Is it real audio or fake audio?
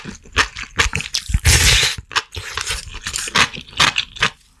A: real